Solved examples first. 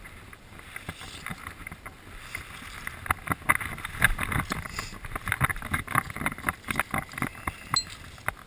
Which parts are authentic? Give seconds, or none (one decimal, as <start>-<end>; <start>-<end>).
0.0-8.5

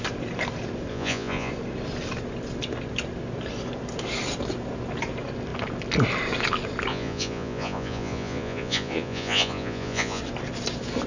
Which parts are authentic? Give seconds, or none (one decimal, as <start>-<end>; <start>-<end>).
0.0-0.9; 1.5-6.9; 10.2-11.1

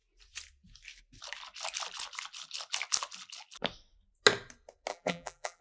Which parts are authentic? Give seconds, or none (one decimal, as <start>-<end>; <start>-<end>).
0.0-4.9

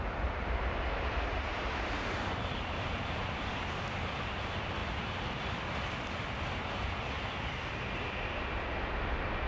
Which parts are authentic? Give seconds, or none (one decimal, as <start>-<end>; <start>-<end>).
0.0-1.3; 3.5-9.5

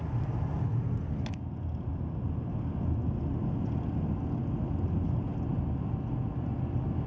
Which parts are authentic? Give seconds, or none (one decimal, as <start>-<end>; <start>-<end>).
0.0-1.9; 2.5-7.1

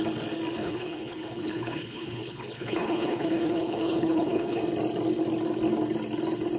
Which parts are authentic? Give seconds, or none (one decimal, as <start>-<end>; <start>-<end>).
0.0-0.6; 4.6-6.6

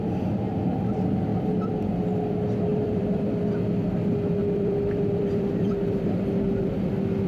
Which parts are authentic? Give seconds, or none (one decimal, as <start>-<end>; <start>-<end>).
0.0-2.7; 3.3-4.4; 6.0-7.3

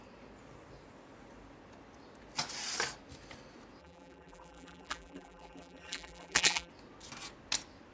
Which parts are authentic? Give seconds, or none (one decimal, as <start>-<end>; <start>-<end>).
0.0-3.8; 6.7-7.9